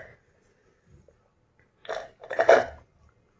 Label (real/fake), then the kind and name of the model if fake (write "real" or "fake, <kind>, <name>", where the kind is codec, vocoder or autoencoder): real